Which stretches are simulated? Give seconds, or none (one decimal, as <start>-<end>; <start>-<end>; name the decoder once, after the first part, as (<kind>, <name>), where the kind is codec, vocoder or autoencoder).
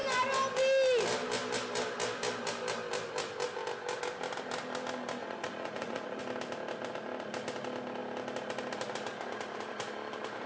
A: 5.2-6.2 (vocoder, Vocos)